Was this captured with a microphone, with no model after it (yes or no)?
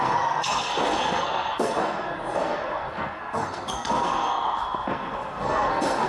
no